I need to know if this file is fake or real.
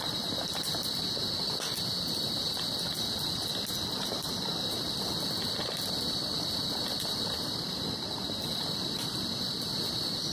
real